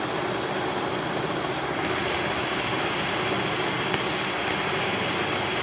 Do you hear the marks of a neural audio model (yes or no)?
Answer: no